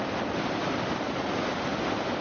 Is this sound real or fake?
real